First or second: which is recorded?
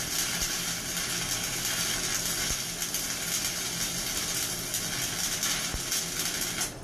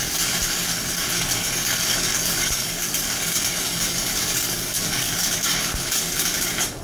first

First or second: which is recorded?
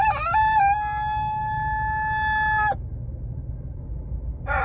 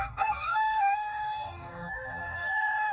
first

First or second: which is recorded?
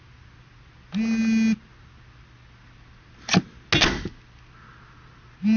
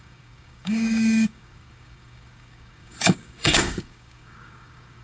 first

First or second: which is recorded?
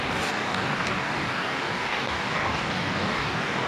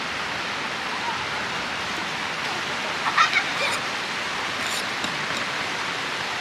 second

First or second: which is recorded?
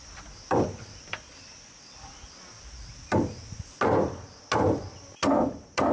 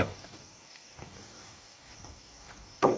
first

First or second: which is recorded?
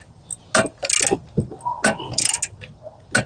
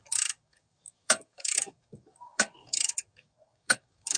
first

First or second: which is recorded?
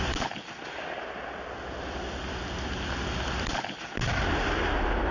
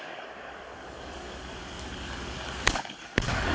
first